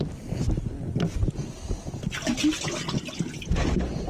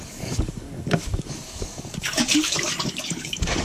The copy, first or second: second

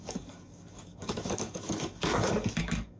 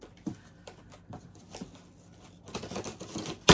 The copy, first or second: first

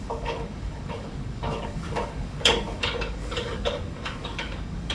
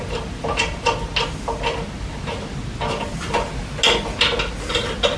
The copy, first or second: first